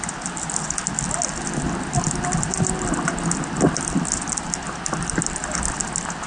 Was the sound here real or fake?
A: real